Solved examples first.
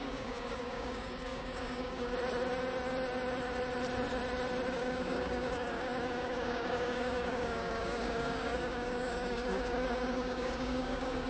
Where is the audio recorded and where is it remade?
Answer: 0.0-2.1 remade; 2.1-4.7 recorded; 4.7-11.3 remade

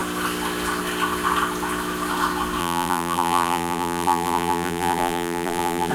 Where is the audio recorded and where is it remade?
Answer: 0.0-2.6 recorded; 2.6-5.9 remade

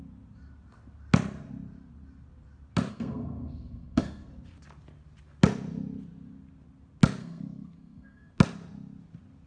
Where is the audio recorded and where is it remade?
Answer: 0.0-2.9 recorded; 2.9-4.3 remade; 4.3-7.2 recorded; 7.2-8.3 remade; 8.3-9.5 recorded